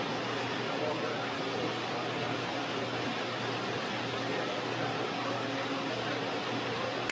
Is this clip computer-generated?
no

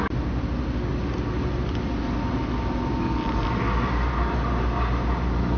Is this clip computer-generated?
no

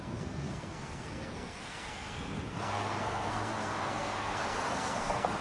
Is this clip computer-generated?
yes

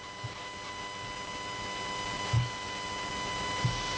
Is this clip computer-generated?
no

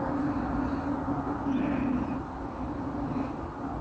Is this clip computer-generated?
no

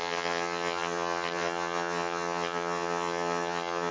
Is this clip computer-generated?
yes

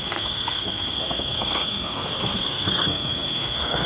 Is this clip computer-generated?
yes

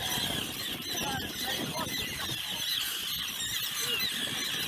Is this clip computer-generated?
no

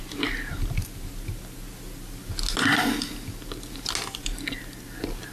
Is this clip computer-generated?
no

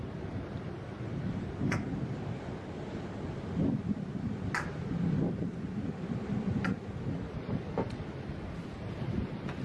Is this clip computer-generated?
no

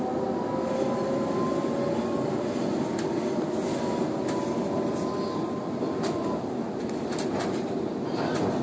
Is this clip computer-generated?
no